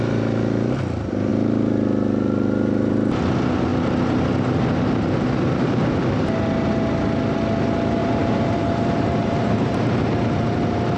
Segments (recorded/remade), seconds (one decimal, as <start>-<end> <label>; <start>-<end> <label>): 0.0-8.0 recorded; 8.0-10.1 remade; 10.1-11.0 recorded